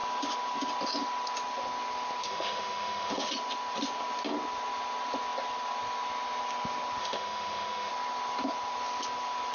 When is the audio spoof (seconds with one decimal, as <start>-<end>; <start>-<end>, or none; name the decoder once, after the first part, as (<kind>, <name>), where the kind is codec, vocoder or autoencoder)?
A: 2.2-3.3 (autoencoder, DAC-VAE); 7.0-7.9